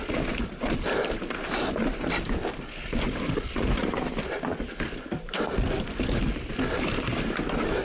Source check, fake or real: real